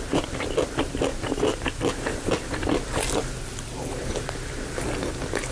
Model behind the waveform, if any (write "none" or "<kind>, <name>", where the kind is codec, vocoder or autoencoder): none